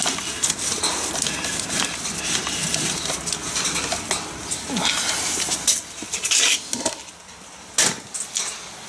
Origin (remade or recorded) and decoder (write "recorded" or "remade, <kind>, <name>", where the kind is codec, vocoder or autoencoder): recorded